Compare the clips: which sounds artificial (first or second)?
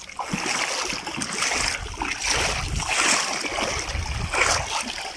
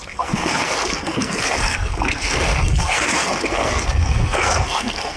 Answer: second